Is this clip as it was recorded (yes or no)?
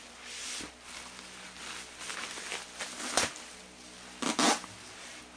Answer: yes